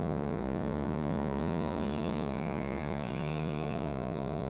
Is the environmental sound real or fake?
fake